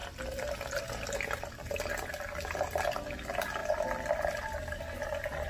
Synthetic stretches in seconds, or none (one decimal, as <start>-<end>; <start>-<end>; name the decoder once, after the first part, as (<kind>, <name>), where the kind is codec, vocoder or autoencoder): none